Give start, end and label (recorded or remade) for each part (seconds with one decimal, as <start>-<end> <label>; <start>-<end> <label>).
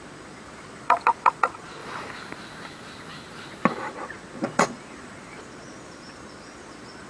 0.0-1.8 remade; 1.8-3.9 recorded; 3.9-7.1 remade